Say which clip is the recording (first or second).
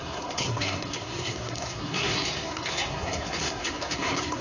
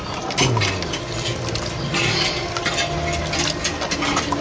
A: second